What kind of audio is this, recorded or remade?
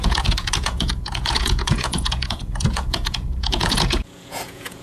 remade